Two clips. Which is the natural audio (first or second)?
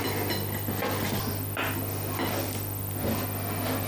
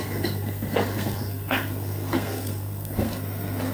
first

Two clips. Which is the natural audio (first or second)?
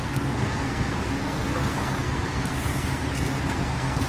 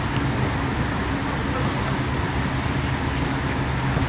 second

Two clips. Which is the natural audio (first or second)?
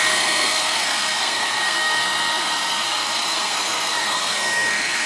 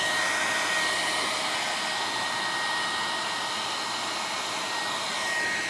second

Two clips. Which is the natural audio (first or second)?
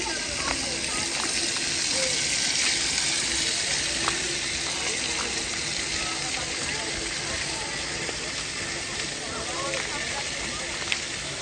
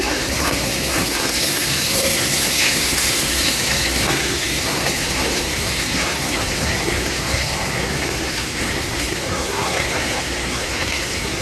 first